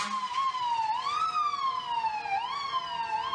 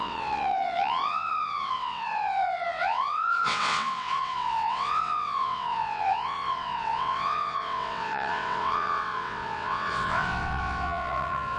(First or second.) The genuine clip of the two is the first